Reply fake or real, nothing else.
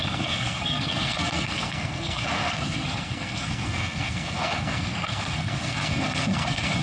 fake